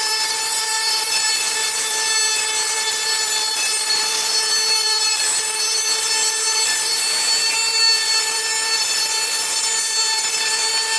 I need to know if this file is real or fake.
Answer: fake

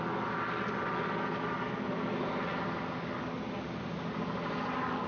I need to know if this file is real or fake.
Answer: real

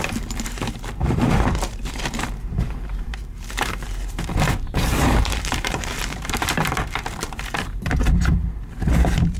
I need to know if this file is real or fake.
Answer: fake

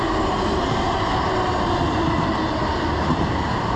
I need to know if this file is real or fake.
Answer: real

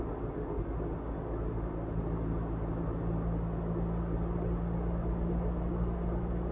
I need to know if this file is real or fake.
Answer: real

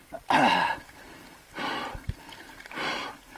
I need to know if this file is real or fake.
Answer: real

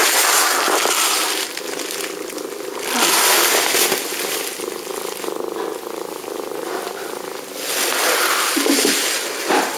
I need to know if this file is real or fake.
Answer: real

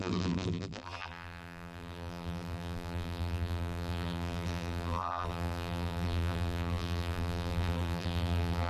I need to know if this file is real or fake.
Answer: fake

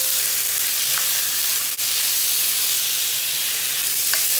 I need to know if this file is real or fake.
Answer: real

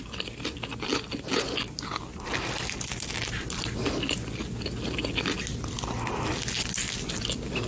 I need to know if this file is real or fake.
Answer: real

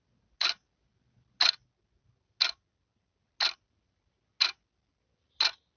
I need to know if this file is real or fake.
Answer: real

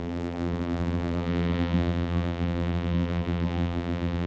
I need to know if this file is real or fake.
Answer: fake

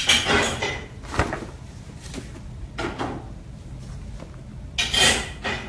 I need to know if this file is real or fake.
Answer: real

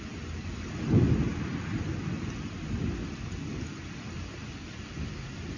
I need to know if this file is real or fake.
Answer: fake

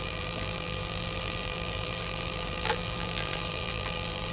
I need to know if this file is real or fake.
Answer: fake